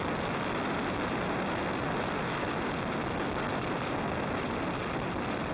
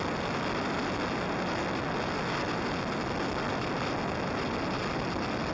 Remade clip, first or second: first